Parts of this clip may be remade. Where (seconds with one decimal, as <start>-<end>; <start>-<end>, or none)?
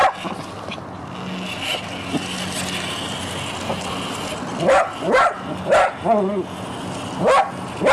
none